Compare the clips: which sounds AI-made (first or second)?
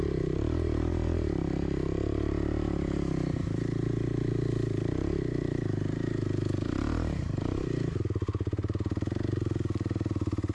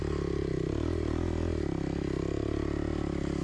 first